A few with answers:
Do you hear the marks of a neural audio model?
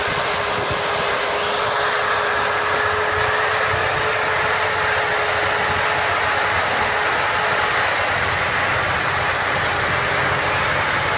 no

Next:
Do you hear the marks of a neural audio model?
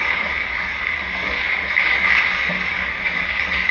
yes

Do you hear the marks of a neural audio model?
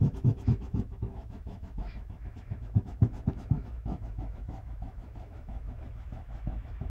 yes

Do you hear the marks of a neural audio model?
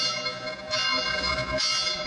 yes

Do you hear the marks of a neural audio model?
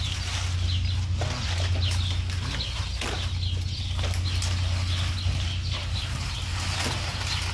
no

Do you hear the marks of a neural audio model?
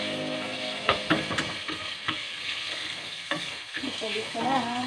yes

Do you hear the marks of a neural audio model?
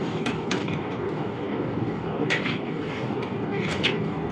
yes